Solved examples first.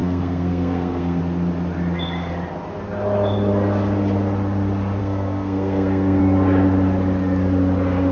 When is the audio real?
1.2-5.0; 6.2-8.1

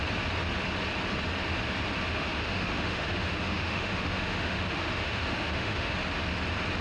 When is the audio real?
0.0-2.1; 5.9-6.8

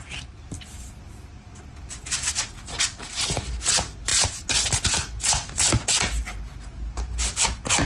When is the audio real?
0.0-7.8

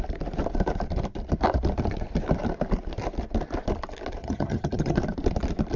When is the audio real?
0.0-4.2; 5.0-5.8

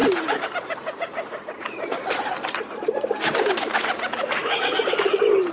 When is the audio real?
none

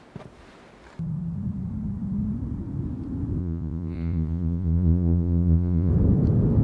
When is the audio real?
0.0-3.4; 5.9-6.6